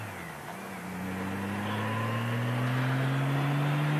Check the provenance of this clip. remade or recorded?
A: recorded